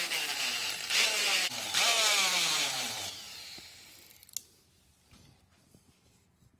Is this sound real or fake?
fake